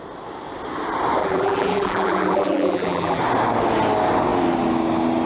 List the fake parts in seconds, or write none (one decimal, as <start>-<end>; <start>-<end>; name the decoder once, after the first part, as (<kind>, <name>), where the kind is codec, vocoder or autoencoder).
1.2-3.2 (vocoder, BigVGAN v2)